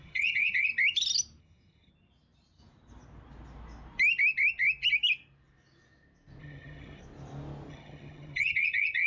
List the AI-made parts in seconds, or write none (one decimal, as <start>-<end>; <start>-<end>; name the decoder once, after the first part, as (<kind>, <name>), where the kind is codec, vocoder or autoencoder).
0.0-0.7 (vocoder, HiFi-GAN); 1.4-1.9; 6.4-7.0; 7.7-9.1